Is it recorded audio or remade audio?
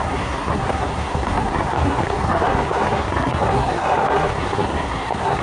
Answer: remade